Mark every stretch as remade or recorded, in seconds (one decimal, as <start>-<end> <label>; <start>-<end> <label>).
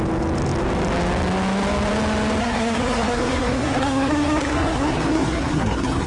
0.0-2.4 recorded; 2.4-6.1 remade